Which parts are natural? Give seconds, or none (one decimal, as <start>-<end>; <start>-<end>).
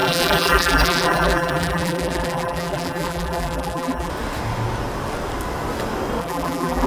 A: 4.1-6.2